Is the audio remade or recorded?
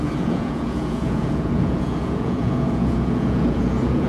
remade